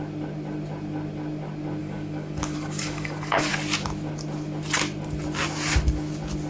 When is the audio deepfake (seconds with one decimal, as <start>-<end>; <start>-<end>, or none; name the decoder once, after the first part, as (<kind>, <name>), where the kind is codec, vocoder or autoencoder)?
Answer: 1.8-3.5 (codec, DAC)